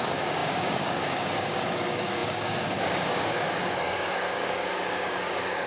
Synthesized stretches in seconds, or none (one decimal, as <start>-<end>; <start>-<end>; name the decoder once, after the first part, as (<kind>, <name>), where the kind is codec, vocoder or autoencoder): 0.0-5.7 (codec, DAC)

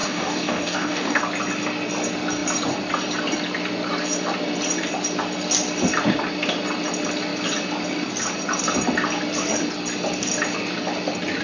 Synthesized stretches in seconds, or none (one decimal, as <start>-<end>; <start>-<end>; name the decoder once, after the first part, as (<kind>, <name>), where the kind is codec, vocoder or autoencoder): 0.0-1.2 (codec, DAC)

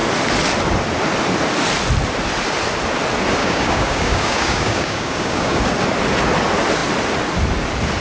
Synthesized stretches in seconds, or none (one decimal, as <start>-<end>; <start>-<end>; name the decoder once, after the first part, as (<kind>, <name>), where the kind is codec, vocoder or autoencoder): 3.4-5.6 (codec, DAC)